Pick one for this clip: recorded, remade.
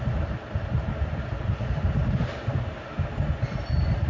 recorded